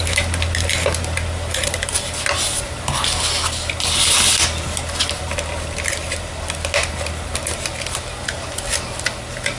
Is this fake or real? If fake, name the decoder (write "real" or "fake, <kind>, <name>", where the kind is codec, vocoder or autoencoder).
real